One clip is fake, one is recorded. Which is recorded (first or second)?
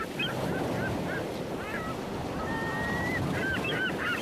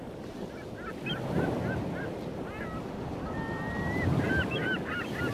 second